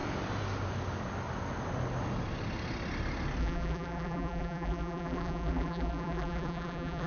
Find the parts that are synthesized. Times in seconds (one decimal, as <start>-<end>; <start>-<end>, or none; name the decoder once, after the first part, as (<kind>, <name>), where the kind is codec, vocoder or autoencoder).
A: 3.4-7.1 (vocoder, BigVGAN v2)